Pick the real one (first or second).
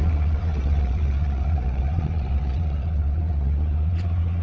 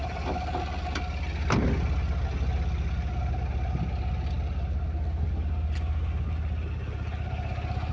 second